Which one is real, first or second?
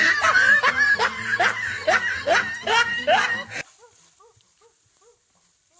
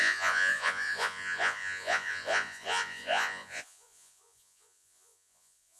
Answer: first